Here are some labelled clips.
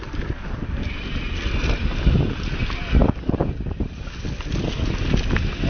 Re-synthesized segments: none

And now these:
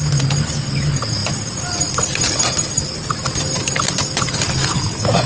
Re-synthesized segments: none

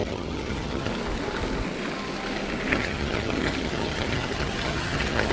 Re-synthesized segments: 0.0-0.9 (vocoder, HiFi-GAN); 2.7-5.3